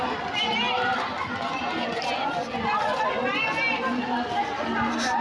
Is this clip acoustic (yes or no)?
yes